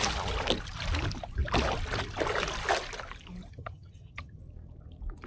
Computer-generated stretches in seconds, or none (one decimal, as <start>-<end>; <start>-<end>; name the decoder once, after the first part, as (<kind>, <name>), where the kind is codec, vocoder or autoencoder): 3.5-4.4 (vocoder, HiFi-GAN)